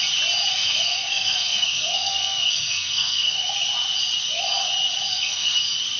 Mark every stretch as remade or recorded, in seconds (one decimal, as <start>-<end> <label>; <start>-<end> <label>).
0.0-0.5 recorded; 0.5-3.5 remade; 3.5-5.1 recorded; 5.1-5.6 remade; 5.6-6.0 recorded